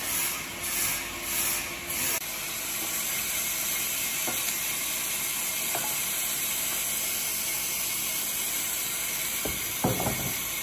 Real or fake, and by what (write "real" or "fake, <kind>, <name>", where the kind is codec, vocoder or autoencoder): real